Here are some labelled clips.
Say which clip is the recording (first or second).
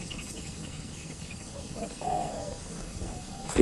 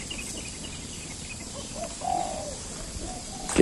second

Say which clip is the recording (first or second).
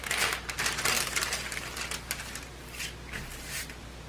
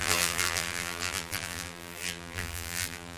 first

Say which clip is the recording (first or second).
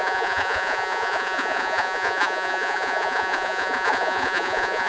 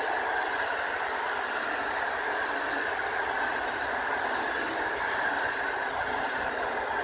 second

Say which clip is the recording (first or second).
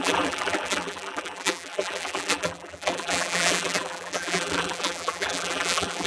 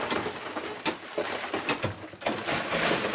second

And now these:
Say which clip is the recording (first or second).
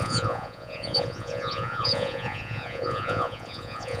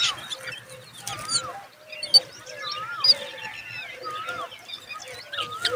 second